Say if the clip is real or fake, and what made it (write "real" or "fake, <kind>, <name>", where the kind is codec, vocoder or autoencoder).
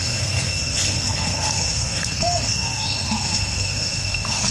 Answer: fake, codec, SNAC